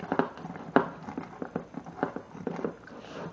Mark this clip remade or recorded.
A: recorded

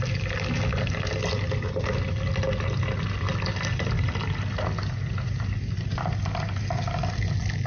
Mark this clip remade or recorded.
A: recorded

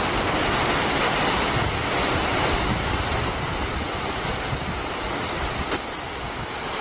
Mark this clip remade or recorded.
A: recorded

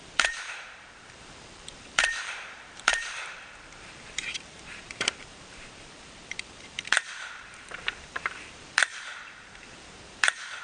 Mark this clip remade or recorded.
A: remade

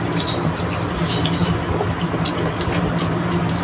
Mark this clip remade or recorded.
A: recorded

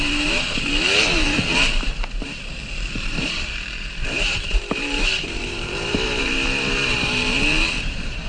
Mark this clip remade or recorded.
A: remade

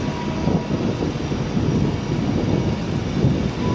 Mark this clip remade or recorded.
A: recorded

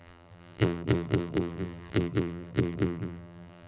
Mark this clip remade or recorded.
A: remade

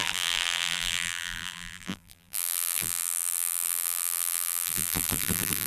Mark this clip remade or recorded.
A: remade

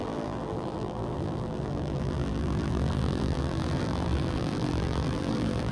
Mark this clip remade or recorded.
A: remade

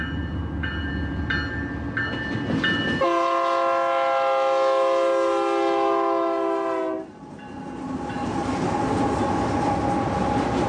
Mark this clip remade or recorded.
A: recorded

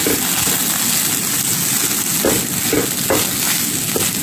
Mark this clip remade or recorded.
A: recorded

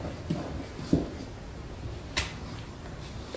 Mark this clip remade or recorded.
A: recorded